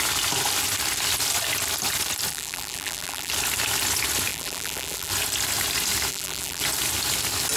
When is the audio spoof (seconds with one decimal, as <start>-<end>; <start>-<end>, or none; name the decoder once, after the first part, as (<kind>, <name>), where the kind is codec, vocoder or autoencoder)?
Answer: 2.3-3.3 (vocoder, BigVGAN v2); 4.3-5.1; 6.1-6.6